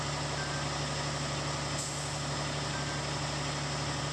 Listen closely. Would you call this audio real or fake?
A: real